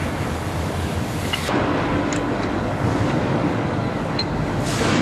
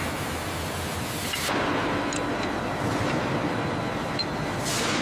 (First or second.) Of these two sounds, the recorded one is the second